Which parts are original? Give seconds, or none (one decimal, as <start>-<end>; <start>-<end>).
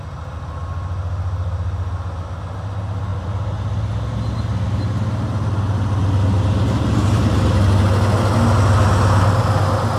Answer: 0.0-10.0